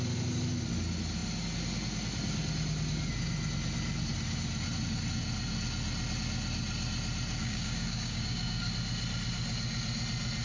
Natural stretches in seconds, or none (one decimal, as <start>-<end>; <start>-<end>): 0.0-7.4; 8.7-10.4